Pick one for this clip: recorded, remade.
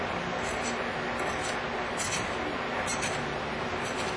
recorded